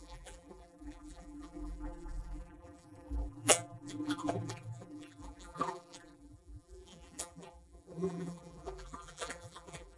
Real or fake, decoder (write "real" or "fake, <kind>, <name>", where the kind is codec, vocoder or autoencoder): fake, vocoder, BigVGAN v2